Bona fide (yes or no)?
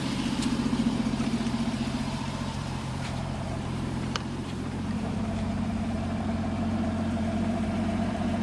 no